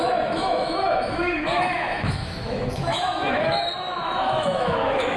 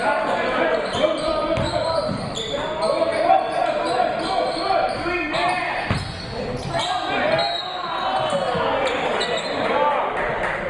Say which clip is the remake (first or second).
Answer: first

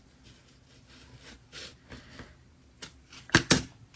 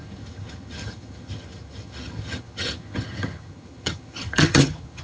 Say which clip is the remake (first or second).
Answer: second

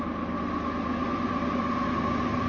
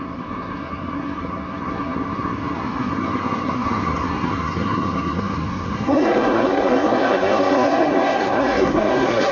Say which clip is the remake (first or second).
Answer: second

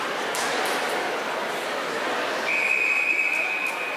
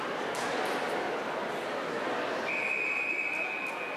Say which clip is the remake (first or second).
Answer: first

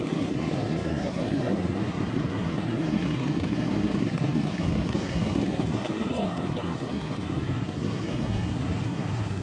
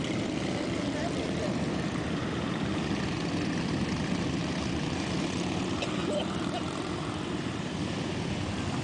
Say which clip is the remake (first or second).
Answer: first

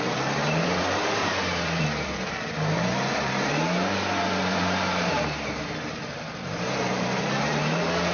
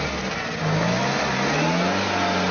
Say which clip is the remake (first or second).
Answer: first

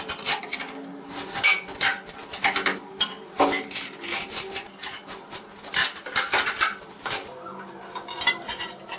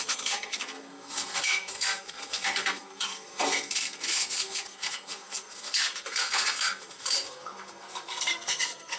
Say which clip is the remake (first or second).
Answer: second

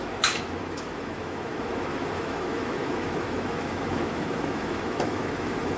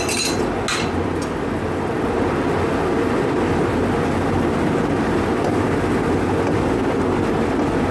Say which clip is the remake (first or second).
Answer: first